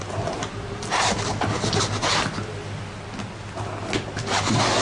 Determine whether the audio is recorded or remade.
recorded